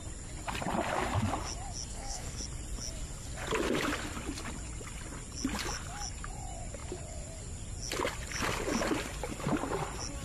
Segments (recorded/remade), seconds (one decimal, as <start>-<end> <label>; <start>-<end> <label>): 0.0-1.9 recorded; 1.9-2.4 remade; 2.4-10.2 recorded